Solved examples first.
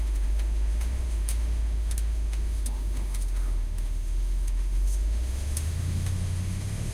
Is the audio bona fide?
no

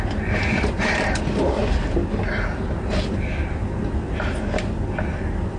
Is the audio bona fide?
yes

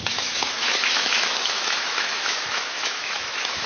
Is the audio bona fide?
no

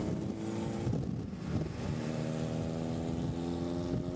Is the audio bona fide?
yes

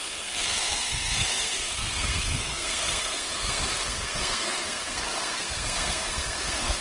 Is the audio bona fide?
no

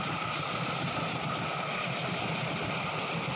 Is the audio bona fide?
yes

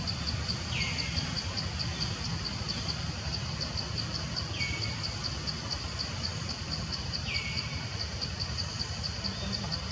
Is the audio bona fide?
yes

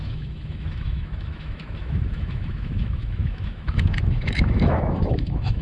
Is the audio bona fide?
no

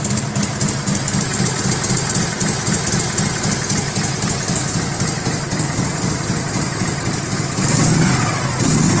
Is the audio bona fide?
yes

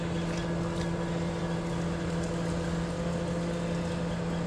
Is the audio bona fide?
yes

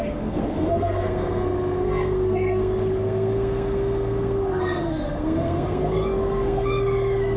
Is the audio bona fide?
no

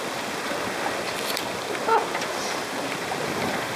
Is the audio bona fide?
yes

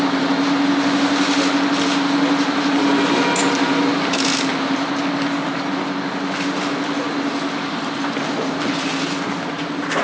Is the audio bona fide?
yes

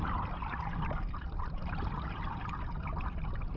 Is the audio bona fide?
yes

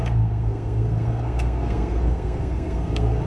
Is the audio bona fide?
no